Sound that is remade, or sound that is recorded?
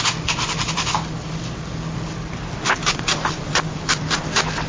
remade